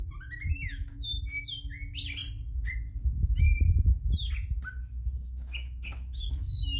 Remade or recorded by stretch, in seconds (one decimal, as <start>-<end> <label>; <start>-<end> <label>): 0.0-0.5 recorded; 0.5-1.1 remade; 1.1-5.0 recorded; 5.0-6.8 remade